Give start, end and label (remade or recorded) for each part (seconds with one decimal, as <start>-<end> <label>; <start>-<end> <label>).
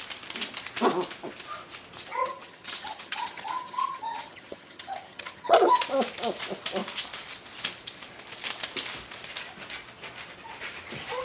0.0-2.1 recorded; 2.1-5.7 remade; 5.7-11.2 recorded